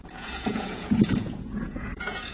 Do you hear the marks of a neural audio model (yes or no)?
yes